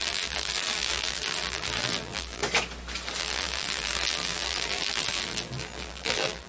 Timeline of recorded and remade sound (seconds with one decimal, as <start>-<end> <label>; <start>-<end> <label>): 0.0-2.4 remade; 2.4-3.2 recorded; 3.2-6.5 remade